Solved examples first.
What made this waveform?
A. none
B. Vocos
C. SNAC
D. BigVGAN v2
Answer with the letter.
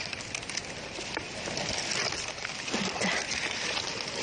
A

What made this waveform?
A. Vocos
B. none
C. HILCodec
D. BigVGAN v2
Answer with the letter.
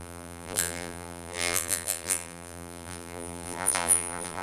D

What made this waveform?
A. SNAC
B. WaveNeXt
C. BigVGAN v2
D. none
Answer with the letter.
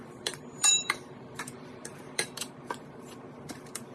C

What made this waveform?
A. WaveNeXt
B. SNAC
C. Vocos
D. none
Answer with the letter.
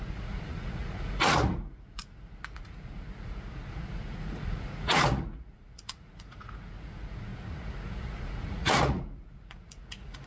C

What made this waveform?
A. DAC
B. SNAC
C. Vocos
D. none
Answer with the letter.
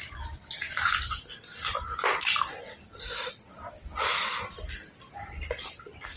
D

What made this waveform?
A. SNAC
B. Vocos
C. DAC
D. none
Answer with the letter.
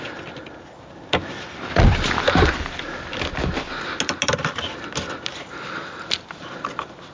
D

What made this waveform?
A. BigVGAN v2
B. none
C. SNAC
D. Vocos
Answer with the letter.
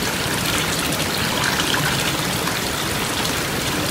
A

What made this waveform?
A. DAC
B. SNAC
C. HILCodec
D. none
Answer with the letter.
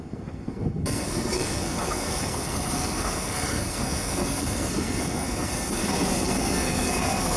B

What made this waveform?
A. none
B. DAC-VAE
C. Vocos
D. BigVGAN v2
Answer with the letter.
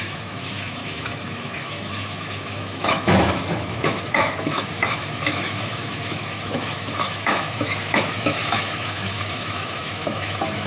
B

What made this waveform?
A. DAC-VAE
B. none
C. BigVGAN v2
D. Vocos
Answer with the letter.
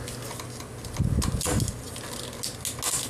B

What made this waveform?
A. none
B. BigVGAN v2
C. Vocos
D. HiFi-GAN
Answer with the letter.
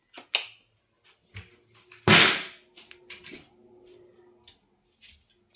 A